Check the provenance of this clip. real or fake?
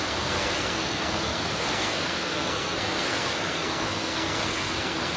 fake